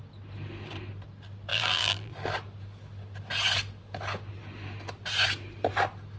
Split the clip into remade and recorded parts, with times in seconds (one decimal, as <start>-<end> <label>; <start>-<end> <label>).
0.0-1.5 recorded; 1.5-2.1 remade; 2.1-6.2 recorded